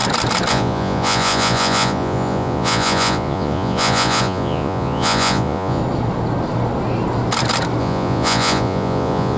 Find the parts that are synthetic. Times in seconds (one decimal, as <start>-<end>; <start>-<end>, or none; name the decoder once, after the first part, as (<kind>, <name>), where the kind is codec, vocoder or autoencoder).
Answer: 0.5-5.8 (vocoder, Vocos); 7.8-9.4